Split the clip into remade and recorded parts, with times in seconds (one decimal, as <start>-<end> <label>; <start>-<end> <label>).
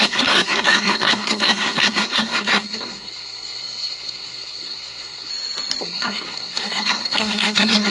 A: 0.0-5.3 remade; 5.3-5.8 recorded; 5.8-7.9 remade